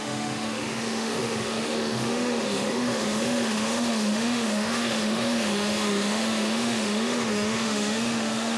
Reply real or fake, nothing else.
fake